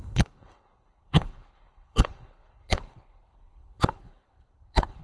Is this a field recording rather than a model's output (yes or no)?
no